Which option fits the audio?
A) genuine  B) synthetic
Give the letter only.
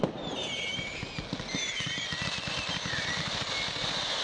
A